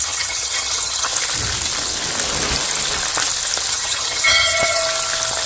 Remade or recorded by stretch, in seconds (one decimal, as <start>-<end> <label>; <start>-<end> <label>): 0.0-1.1 remade; 1.1-3.7 recorded; 3.7-4.8 remade; 4.8-5.5 recorded